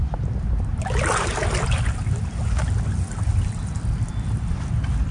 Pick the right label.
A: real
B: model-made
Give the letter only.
A